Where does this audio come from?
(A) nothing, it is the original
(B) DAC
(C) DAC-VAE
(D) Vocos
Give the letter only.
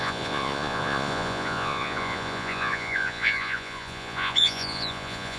D